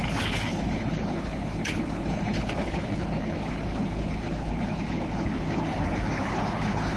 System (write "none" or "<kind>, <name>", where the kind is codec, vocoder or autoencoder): codec, HILCodec